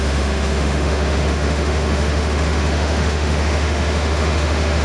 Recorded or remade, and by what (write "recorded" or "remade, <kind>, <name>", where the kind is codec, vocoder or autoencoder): remade, autoencoder, DAC-VAE